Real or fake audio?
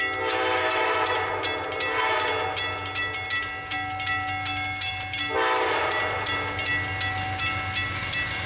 real